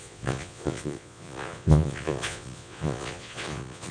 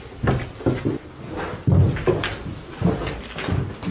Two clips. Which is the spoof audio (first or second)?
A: first